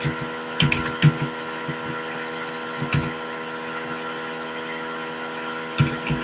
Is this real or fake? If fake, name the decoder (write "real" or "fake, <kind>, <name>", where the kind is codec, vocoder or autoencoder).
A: real